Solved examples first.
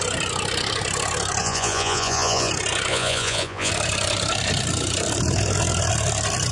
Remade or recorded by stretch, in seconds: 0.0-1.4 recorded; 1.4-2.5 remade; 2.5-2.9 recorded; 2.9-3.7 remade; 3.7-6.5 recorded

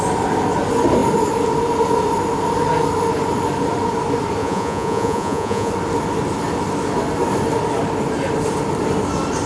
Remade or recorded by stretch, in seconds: 0.0-4.4 recorded; 4.4-5.7 remade; 5.7-9.5 recorded

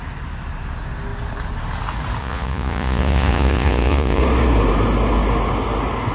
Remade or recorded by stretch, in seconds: 0.0-2.2 recorded; 2.2-4.2 remade; 4.2-6.1 recorded

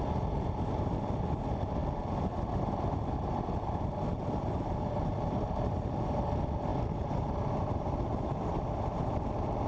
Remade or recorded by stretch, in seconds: 0.0-9.7 recorded